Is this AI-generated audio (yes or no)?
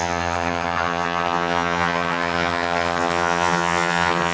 yes